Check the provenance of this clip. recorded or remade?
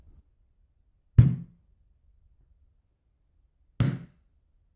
recorded